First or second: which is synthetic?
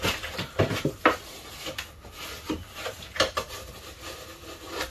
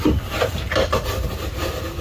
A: second